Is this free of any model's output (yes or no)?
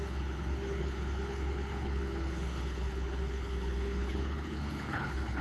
no